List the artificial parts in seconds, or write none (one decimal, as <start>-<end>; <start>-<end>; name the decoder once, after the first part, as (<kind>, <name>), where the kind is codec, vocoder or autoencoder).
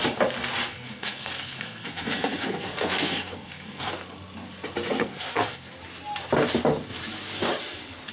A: 0.7-3.9 (codec, SNAC); 4.9-5.7